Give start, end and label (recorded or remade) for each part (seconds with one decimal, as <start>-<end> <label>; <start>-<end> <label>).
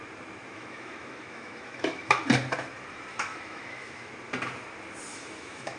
0.0-0.5 recorded; 0.5-2.2 remade; 2.2-3.1 recorded; 3.1-4.1 remade; 4.1-5.1 recorded; 5.1-5.8 remade